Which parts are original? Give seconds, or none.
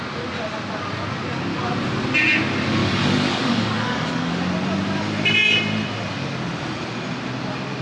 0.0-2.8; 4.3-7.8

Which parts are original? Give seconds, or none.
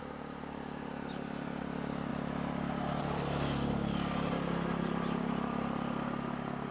0.0-6.7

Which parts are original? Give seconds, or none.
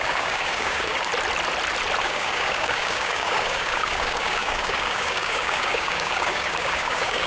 1.1-2.0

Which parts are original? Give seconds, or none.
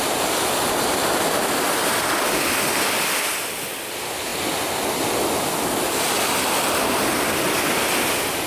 0.0-8.5